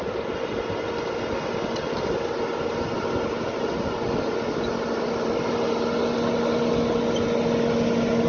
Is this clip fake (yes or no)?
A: no